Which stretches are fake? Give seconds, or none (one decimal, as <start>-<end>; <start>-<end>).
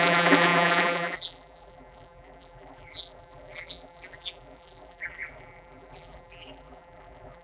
0.0-7.4